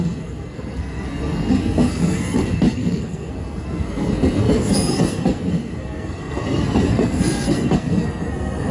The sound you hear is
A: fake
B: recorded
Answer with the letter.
A